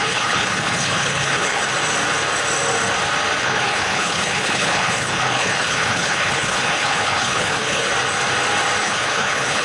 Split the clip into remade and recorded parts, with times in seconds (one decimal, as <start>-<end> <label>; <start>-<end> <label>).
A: 0.0-1.6 remade; 1.6-3.4 recorded; 3.4-7.9 remade; 7.9-8.8 recorded; 8.8-9.6 remade